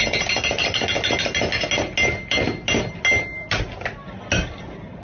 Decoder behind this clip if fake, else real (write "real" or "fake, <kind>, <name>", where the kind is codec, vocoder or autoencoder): real